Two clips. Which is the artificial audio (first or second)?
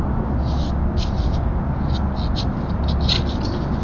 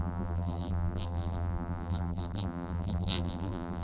second